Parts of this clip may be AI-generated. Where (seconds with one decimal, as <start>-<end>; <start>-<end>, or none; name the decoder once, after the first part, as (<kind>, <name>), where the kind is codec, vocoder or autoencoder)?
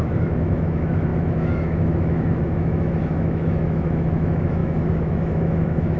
0.0-6.0 (autoencoder, DAC-VAE)